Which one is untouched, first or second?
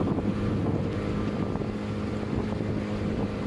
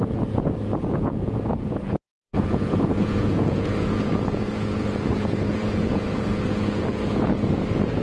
first